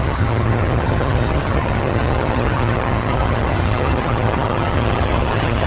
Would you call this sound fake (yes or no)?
yes